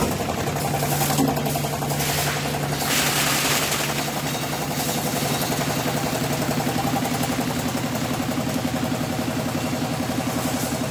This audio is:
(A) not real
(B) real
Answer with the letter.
B